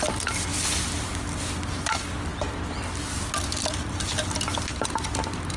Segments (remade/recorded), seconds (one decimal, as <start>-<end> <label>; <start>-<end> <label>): 0.0-0.5 recorded; 0.5-1.0 remade; 1.0-5.6 recorded